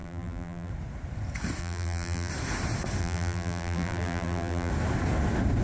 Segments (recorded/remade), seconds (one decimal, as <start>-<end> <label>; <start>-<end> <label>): 0.0-0.7 remade; 0.7-1.6 recorded; 1.6-2.3 remade; 2.3-3.0 recorded; 3.0-4.7 remade; 4.7-5.6 recorded